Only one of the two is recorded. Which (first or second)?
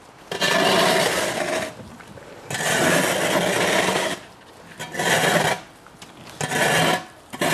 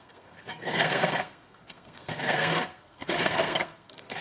first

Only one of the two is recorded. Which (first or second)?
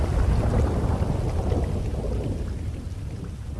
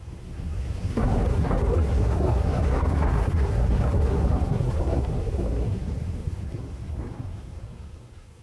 first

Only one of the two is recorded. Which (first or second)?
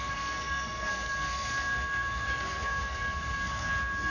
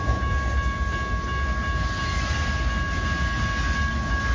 second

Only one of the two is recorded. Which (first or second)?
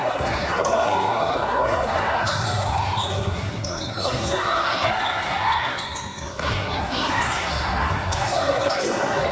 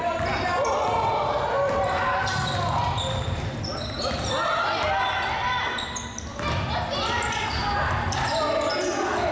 second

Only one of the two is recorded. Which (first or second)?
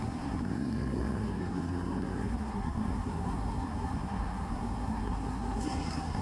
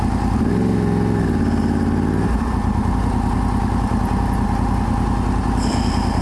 second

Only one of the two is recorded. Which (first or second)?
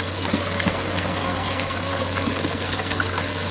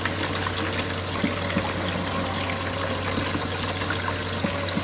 second